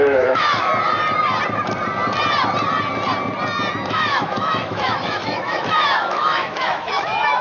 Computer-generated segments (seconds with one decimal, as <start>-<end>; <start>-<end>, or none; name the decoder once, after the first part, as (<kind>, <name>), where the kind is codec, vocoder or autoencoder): 0.0-0.7 (autoencoder, DAC-VAE); 3.9-7.4